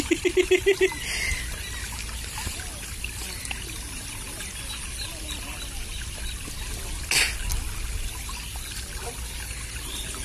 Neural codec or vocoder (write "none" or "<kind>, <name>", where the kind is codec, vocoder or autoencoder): none